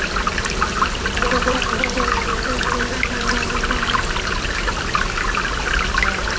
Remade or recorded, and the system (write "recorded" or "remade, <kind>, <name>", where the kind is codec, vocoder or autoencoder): recorded